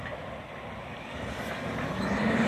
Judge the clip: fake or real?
real